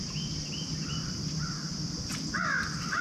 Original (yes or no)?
yes